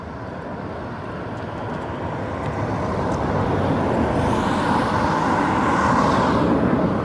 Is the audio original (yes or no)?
yes